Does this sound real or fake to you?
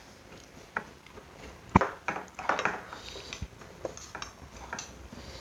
real